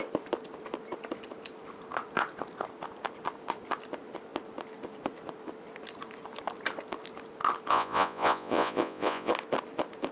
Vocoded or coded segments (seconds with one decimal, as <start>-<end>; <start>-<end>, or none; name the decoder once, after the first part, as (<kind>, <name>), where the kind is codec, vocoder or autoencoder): 7.7-9.3 (vocoder, Vocos)